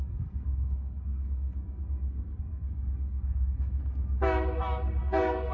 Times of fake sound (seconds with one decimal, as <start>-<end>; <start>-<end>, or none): 0.0-3.8; 5.0-5.5